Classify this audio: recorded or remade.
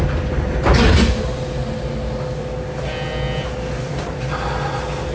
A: recorded